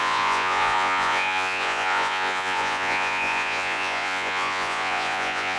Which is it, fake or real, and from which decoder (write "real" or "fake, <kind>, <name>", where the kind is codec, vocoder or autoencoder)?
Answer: fake, vocoder, Vocos